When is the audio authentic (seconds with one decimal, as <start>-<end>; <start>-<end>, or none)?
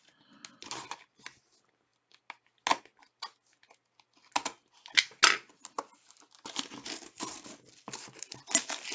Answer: 0.0-8.9